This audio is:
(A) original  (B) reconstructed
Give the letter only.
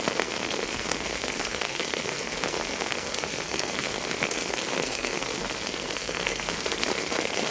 B